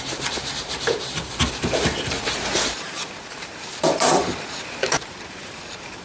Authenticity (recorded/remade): remade